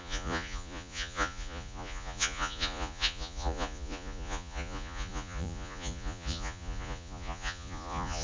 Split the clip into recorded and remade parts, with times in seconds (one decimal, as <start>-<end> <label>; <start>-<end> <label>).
0.0-8.2 remade